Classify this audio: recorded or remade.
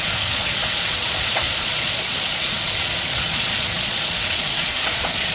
remade